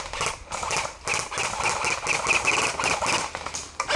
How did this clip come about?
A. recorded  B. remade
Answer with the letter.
A